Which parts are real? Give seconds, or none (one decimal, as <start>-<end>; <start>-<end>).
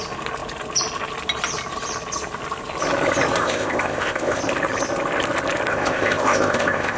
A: 0.0-3.4; 4.4-5.7